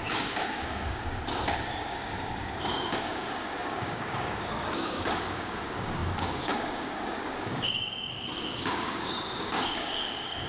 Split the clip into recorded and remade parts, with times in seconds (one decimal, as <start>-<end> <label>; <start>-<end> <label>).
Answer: 0.0-1.0 remade; 1.0-1.8 recorded; 1.8-10.5 remade